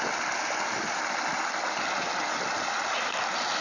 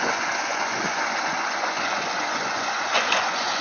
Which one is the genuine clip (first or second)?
first